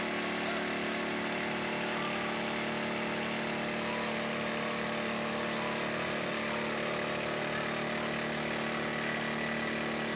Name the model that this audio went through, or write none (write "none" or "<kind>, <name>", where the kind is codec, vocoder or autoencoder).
none